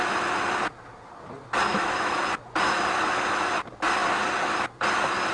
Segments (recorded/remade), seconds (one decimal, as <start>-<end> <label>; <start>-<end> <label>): 0.0-1.7 recorded; 1.7-2.2 remade; 2.2-5.3 recorded